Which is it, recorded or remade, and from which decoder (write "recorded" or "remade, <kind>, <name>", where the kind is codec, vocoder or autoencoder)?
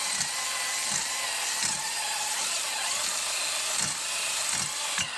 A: recorded